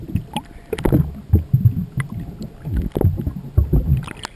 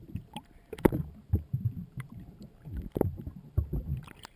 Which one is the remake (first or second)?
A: second